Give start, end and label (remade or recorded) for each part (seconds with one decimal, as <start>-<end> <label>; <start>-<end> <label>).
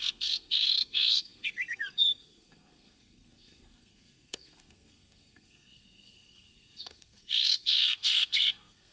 0.0-8.9 remade